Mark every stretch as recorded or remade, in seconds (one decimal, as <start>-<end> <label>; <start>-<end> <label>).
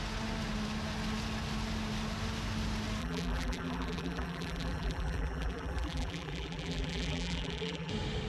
0.0-3.0 recorded; 3.0-7.9 remade; 7.9-8.3 recorded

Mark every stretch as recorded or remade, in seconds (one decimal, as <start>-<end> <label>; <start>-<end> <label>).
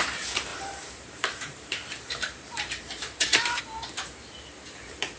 0.0-0.5 recorded; 0.5-3.6 remade; 3.6-5.2 recorded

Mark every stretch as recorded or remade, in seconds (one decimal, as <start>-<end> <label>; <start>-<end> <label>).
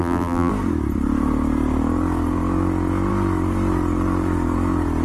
0.0-0.5 remade; 0.5-5.0 recorded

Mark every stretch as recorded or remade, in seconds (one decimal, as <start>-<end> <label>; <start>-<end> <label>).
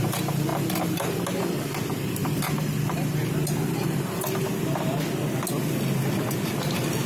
0.0-0.5 recorded; 0.5-1.2 remade; 1.2-2.2 recorded; 2.2-4.2 remade; 4.2-7.1 recorded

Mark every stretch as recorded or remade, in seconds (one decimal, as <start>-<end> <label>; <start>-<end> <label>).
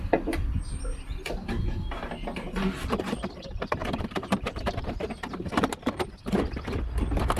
0.0-3.8 recorded; 3.8-6.1 remade; 6.1-7.4 recorded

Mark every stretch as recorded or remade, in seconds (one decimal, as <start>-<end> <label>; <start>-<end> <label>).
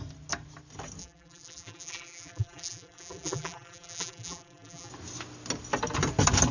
0.0-1.0 recorded; 1.0-4.9 remade; 4.9-6.5 recorded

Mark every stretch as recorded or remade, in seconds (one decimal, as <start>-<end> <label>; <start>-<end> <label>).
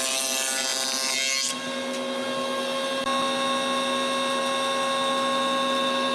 0.0-6.1 recorded